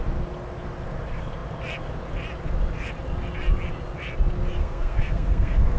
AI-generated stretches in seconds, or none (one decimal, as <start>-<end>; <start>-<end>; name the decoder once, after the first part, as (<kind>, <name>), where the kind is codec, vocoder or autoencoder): 4.6-5.8 (codec, SNAC)